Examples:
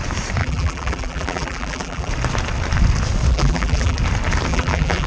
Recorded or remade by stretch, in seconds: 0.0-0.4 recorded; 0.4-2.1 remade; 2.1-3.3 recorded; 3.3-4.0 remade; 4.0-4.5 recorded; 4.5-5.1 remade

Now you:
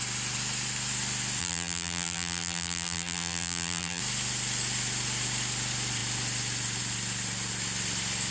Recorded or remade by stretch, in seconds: 0.0-1.4 recorded; 1.4-4.0 remade; 4.0-8.3 recorded

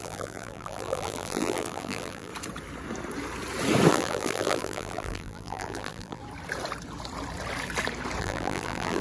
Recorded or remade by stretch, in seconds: 0.0-2.3 remade; 2.3-3.9 recorded; 3.9-6.2 remade; 6.2-8.2 recorded; 8.2-9.0 remade